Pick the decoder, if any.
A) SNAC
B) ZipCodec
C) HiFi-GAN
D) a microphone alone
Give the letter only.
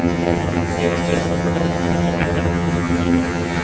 C